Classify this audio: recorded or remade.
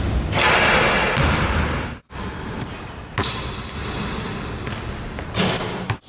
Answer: recorded